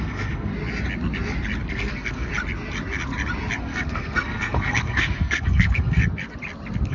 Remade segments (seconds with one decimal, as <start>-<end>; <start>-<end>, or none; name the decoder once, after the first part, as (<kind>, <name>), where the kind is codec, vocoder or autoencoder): 0.0-0.5 (codec, SNAC); 1.7-2.3; 3.6-6.0